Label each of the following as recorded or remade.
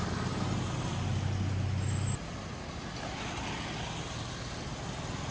recorded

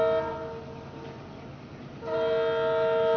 recorded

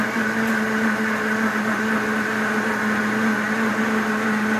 recorded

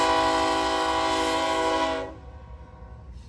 recorded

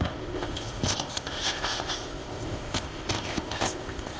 remade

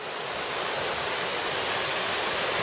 recorded